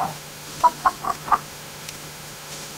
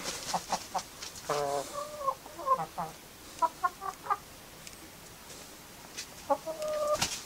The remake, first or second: first